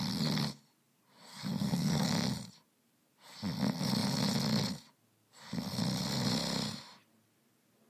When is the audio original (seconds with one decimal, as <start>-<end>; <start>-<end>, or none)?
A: 0.0-1.3; 2.1-7.9